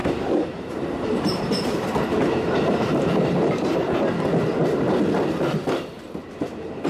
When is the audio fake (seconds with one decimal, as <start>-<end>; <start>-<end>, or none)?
0.0-4.1